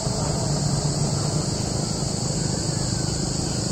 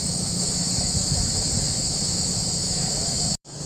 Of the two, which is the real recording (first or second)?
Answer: first